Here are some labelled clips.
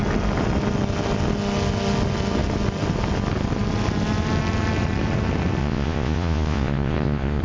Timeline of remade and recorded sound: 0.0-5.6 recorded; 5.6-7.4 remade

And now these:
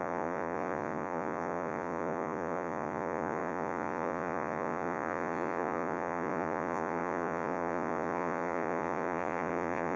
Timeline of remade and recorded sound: 0.0-10.0 remade

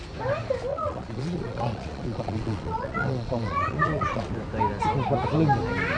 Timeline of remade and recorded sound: 0.0-0.7 recorded; 0.7-4.3 remade; 4.3-6.0 recorded

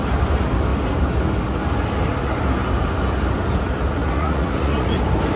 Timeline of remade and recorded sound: 0.0-4.0 recorded; 4.0-5.0 remade; 5.0-5.4 recorded

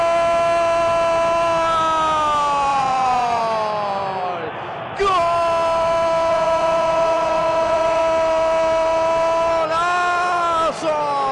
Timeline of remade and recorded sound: 0.0-2.7 recorded; 2.7-3.4 remade; 3.4-6.3 recorded; 6.3-8.0 remade; 8.0-11.3 recorded

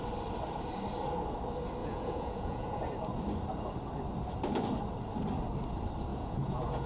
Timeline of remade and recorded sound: 0.0-1.8 recorded; 1.8-2.8 remade; 2.8-6.1 recorded; 6.1-6.9 remade